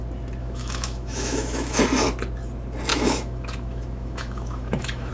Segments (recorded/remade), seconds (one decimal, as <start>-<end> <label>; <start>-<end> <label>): 0.0-0.4 recorded; 0.4-1.8 remade; 1.8-2.9 recorded; 2.9-5.1 remade